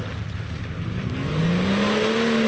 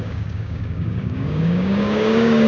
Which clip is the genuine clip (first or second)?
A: first